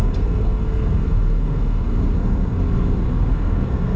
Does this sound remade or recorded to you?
remade